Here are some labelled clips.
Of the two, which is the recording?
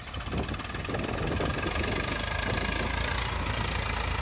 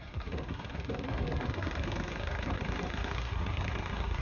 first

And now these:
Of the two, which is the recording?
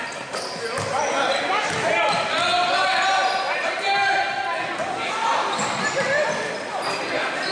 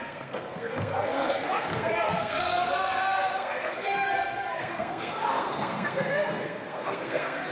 first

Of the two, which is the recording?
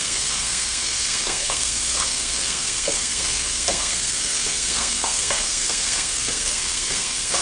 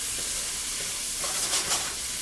second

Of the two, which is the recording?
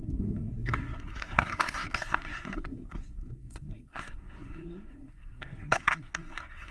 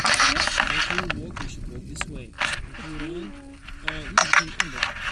second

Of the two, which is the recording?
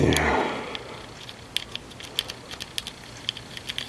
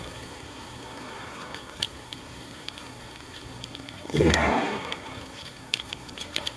first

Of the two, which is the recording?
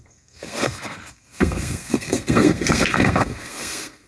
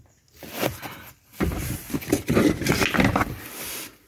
second